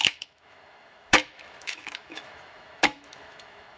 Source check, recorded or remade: remade